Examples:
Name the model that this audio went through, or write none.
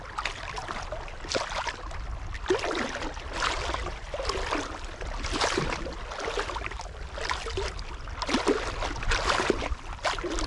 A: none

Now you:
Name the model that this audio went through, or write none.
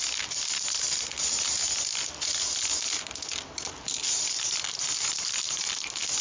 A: none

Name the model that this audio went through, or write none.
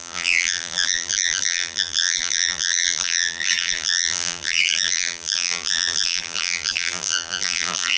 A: vocoder, BigVGAN v2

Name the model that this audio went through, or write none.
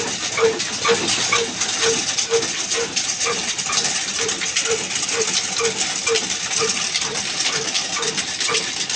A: none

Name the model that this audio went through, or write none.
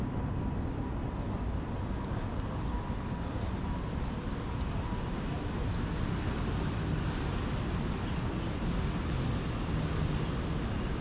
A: none